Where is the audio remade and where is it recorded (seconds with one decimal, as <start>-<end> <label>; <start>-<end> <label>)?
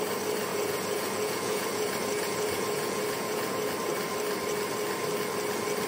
0.0-0.5 recorded; 0.5-3.7 remade; 3.7-5.9 recorded